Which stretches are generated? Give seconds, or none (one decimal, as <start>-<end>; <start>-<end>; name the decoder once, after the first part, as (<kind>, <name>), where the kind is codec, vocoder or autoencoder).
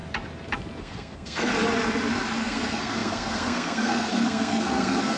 0.8-1.5 (codec, SNAC); 2.4-5.2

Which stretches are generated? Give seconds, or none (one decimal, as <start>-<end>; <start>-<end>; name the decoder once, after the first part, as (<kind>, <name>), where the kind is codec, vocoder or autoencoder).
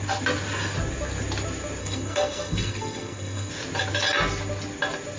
1.8-3.5 (codec, SNAC)